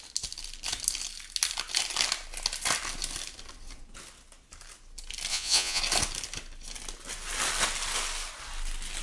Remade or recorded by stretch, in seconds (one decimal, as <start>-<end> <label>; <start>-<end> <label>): 0.0-5.3 recorded; 5.3-5.8 remade; 5.8-9.0 recorded